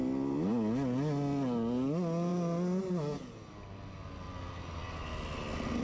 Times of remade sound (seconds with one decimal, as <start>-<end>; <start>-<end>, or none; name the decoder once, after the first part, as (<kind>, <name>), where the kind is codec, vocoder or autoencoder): none